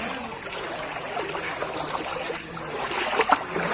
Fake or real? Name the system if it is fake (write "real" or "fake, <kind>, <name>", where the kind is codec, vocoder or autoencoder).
real